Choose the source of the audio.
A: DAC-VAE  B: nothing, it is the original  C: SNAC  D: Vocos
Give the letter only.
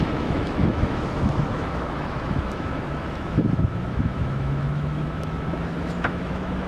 A